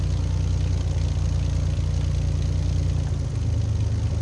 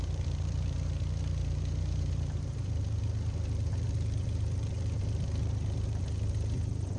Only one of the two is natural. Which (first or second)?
first